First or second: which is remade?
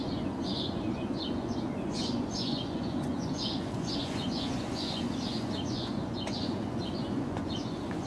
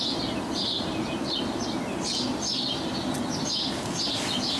first